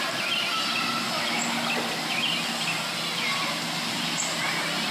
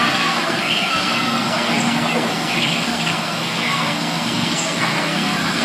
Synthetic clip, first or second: second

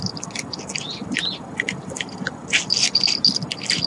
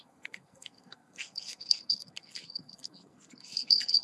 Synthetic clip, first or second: second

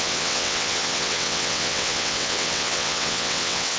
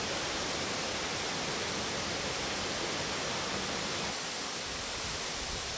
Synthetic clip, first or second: first